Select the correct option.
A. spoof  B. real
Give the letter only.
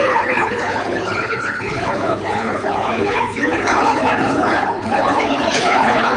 A